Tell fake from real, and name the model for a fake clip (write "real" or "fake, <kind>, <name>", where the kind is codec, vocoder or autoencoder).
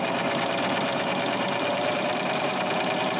fake, vocoder, BigVGAN v2